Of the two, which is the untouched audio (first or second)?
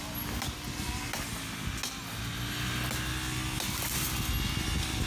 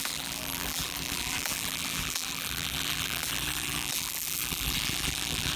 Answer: first